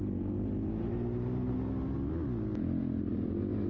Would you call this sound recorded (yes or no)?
yes